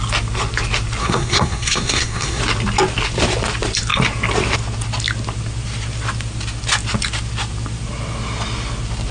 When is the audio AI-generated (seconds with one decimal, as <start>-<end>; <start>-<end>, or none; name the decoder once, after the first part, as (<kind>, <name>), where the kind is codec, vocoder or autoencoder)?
1.0-2.4 (codec, SNAC)